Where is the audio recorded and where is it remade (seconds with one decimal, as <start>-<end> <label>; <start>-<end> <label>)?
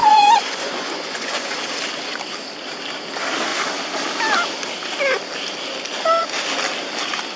0.0-1.6 remade; 1.6-7.4 recorded